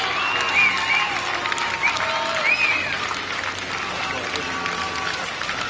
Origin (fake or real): real